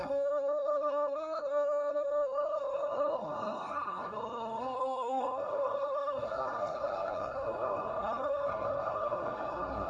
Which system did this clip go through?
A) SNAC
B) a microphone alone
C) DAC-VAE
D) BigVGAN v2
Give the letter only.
A